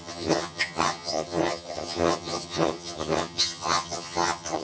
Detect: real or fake fake